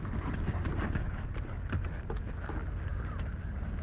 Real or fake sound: real